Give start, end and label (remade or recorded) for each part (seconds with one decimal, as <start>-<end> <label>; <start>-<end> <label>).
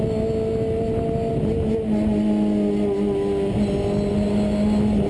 0.0-5.1 recorded